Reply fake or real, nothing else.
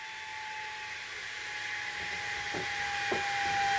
real